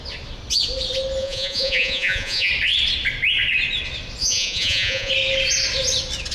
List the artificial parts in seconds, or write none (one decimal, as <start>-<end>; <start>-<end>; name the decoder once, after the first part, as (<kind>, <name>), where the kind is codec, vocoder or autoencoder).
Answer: 1.2-2.5 (vocoder, Vocos); 4.2-5.1